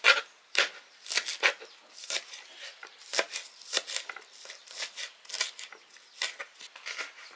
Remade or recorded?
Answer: recorded